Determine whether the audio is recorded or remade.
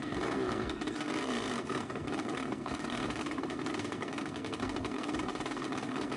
remade